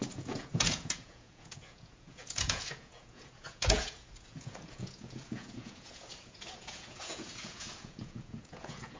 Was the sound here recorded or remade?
remade